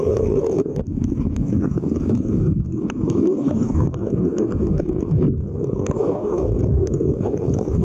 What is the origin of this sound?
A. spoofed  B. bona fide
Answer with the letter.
A